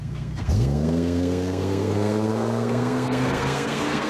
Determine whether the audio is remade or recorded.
remade